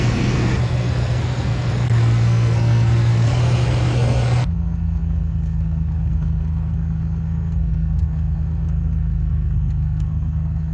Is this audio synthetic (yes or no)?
yes